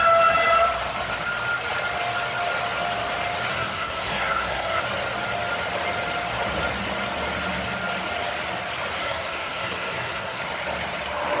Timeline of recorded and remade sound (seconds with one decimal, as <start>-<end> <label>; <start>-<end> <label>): 0.0-3.5 recorded; 3.5-4.8 remade; 4.8-9.0 recorded; 9.0-10.4 remade; 10.4-11.4 recorded